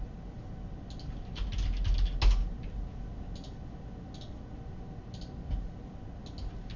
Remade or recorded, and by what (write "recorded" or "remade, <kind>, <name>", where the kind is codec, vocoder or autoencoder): recorded